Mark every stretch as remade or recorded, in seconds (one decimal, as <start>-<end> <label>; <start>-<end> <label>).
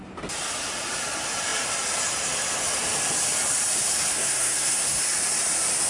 0.0-4.1 recorded; 4.1-5.0 remade; 5.0-5.9 recorded